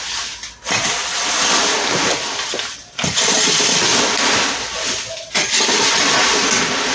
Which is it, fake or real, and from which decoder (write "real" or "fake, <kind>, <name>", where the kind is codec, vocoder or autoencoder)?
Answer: real